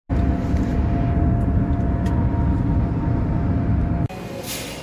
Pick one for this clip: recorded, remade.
recorded